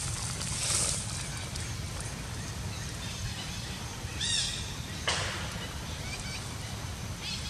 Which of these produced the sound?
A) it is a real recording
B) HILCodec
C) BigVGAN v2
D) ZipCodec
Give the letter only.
A